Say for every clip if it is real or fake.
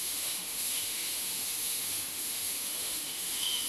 fake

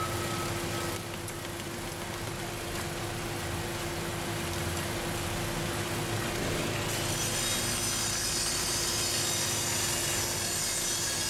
real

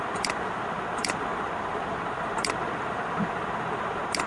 real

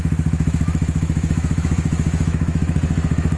fake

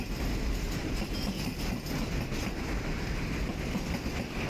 real